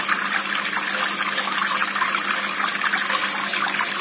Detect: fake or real real